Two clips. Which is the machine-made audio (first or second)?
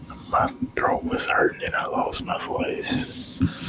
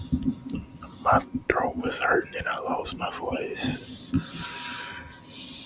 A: first